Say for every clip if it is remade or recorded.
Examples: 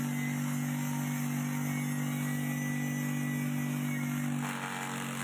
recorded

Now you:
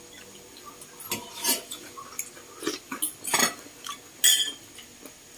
recorded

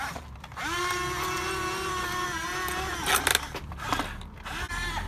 recorded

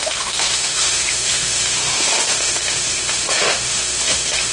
remade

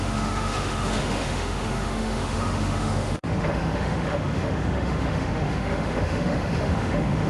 remade